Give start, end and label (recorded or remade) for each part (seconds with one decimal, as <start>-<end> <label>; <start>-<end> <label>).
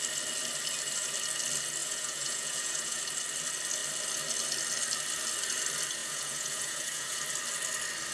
0.0-1.8 recorded; 1.8-3.0 remade; 3.0-6.0 recorded; 6.0-7.2 remade; 7.2-8.1 recorded